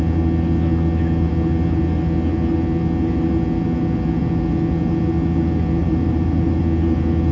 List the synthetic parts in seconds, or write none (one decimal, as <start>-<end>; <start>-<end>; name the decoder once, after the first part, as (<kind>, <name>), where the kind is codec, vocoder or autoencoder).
5.8-6.6 (vocoder, BigVGAN v2)